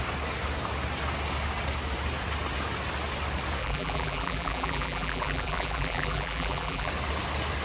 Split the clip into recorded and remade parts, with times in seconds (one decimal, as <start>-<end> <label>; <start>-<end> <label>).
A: 0.0-3.6 recorded; 3.6-6.9 remade; 6.9-7.6 recorded